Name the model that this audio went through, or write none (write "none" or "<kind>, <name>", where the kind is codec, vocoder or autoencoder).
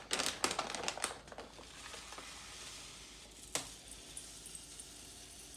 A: none